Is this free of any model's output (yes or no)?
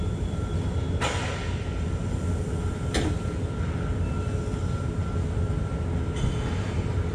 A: yes